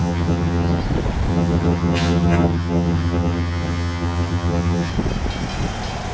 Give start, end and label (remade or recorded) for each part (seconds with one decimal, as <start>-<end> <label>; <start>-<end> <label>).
0.0-0.8 remade; 0.8-1.3 recorded; 1.3-4.9 remade; 4.9-6.1 recorded